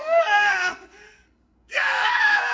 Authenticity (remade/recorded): remade